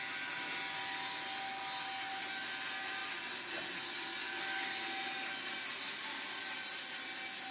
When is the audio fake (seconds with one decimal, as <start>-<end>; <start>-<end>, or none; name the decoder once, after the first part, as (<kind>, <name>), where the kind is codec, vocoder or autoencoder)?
none